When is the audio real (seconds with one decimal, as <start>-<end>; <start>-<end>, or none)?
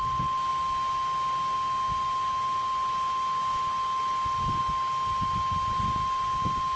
0.0-6.8